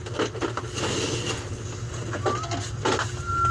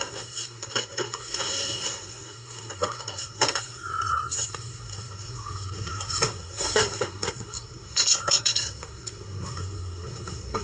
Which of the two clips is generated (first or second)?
second